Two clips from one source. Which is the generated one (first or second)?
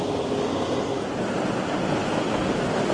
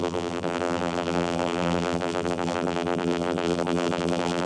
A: second